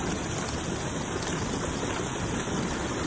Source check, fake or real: real